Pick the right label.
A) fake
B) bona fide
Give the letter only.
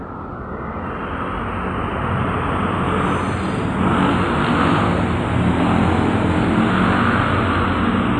B